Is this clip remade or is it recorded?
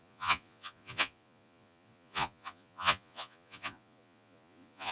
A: remade